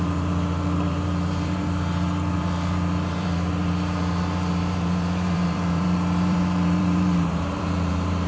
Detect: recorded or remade remade